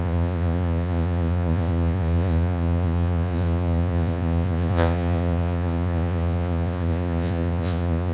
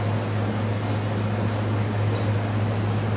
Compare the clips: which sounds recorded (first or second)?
second